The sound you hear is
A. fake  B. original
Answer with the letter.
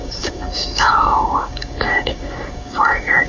A